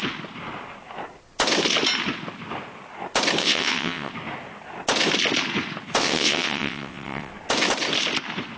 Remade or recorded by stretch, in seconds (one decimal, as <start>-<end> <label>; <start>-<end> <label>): 0.0-3.4 recorded; 3.4-4.1 remade; 4.1-6.0 recorded; 6.0-7.3 remade; 7.3-8.6 recorded